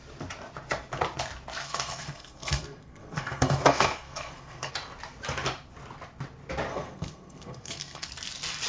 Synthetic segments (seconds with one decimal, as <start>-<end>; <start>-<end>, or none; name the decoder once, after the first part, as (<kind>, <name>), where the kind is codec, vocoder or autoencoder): 1.6-4.7 (codec, SNAC); 6.7-8.1